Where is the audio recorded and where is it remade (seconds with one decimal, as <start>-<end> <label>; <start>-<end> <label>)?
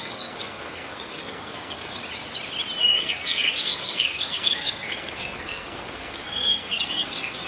0.0-2.0 remade; 2.0-2.8 recorded; 2.8-7.5 remade